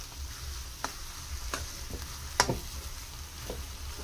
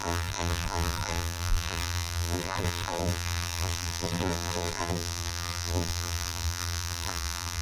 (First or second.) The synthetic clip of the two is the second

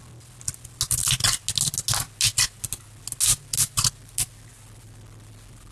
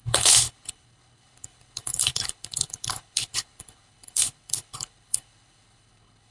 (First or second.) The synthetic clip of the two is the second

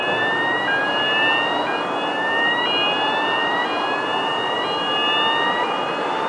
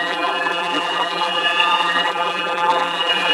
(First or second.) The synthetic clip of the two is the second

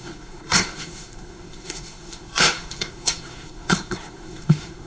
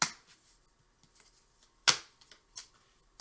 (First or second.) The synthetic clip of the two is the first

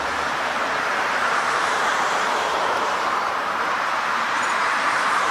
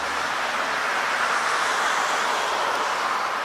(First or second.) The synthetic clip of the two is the first